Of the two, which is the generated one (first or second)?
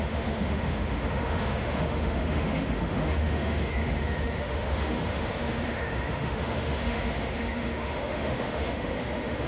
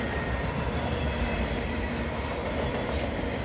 first